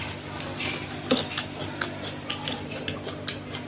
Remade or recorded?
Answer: remade